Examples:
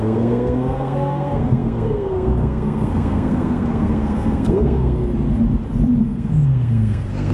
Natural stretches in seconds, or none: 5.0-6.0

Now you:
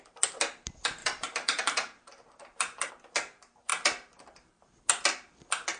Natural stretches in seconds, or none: 0.0-1.0; 2.9-3.7; 4.7-5.8

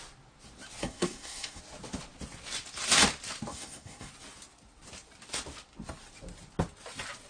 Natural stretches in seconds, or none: 0.0-0.8; 1.6-3.5; 4.1-7.3

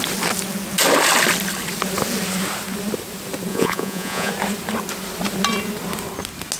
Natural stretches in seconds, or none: 0.0-3.5; 4.3-6.6

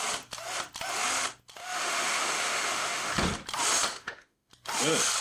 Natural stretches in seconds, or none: 0.0-1.6; 3.1-3.9; 4.5-5.2

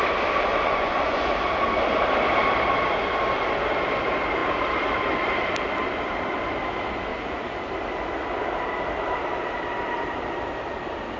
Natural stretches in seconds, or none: 0.0-0.5; 1.3-7.1; 7.7-11.2

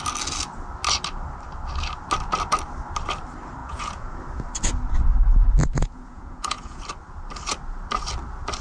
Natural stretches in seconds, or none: 0.0-3.6; 4.2-5.6; 6.8-8.6

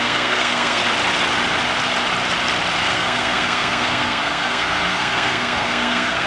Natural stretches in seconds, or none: 0.8-2.9